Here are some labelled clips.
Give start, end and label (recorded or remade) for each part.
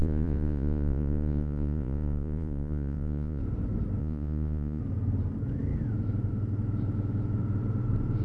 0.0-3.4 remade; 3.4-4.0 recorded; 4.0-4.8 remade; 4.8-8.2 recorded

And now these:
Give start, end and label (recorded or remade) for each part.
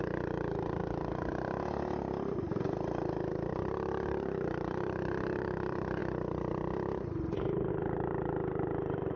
0.0-0.8 remade; 0.8-3.5 recorded; 3.5-6.0 remade; 6.0-7.7 recorded; 7.7-9.2 remade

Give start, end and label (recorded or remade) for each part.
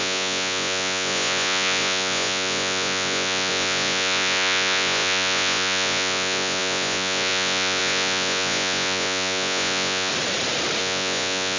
0.0-10.1 remade; 10.1-10.8 recorded; 10.8-11.6 remade